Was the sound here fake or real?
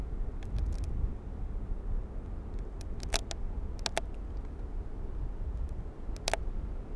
real